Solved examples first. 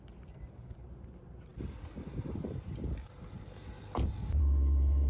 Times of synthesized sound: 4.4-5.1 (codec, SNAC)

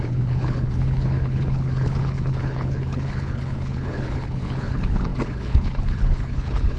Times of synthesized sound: 0.0-6.8 (codec, HILCodec)

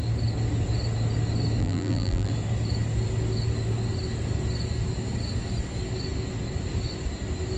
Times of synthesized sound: 1.6-2.3 (vocoder, BigVGAN v2)

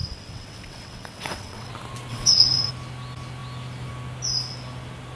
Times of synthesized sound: 0.0-1.7 (vocoder, WaveNeXt); 2.1-2.7

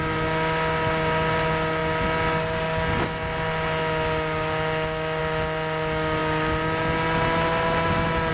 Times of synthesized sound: none

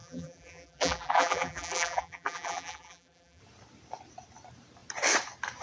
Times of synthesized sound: 0.0-3.4 (vocoder, BigVGAN v2)

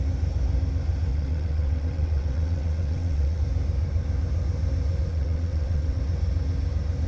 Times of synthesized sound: 1.1-3.4 (vocoder, WaveNeXt); 5.1-6.0

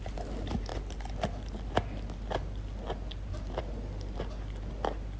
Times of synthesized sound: none